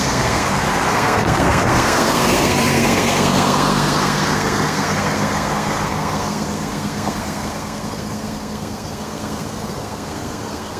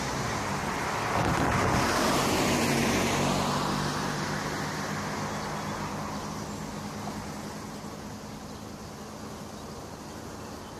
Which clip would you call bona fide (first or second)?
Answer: second